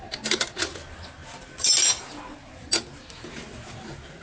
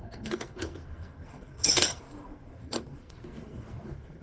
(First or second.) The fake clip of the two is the second